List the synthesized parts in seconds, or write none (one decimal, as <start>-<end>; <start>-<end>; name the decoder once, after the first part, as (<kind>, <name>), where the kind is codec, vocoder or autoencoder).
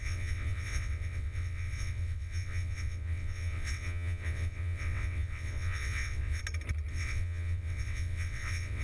0.0-6.4 (vocoder, WaveNeXt); 6.9-8.8